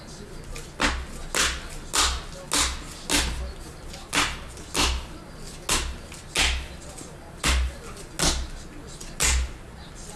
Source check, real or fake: real